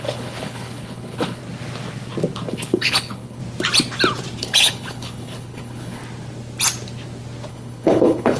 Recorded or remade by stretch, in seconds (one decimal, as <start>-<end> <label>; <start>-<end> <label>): 0.0-1.4 remade; 1.4-2.5 recorded; 2.5-3.4 remade; 3.4-4.4 recorded; 4.4-6.0 remade; 6.0-7.5 recorded; 7.5-8.4 remade